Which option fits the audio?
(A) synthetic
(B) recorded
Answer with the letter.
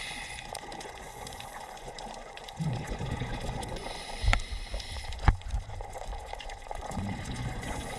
A